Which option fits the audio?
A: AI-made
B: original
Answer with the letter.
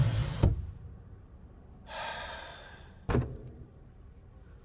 B